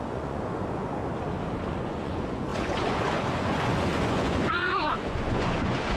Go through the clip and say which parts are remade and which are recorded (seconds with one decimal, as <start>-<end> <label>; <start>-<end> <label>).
0.0-1.0 remade; 1.0-1.7 recorded; 1.7-6.0 remade